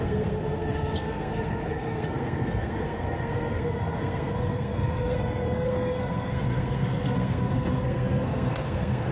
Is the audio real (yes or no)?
no